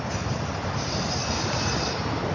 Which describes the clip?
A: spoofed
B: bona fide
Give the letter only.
B